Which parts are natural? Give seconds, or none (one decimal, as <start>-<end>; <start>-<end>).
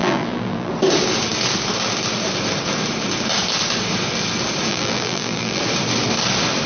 0.7-4.7; 5.6-6.7